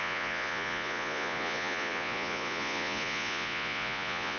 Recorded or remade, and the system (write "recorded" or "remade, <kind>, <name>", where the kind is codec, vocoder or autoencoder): remade, vocoder, Vocos